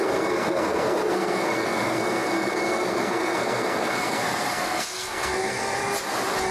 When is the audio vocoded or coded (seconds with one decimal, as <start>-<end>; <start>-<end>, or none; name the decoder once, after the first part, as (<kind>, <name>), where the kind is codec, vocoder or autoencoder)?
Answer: 0.0-5.8 (codec, SNAC)